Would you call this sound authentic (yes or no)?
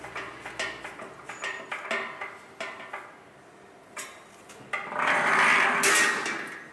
yes